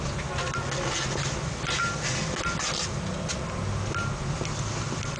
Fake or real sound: real